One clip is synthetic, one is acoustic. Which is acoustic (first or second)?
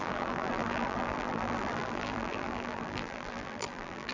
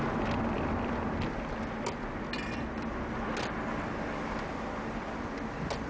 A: second